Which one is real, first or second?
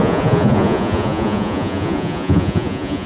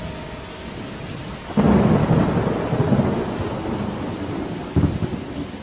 second